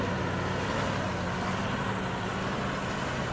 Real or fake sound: real